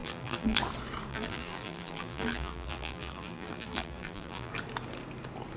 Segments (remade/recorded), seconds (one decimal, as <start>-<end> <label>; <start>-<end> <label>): 0.0-0.6 remade; 0.6-1.1 recorded; 1.1-4.5 remade; 4.5-5.6 recorded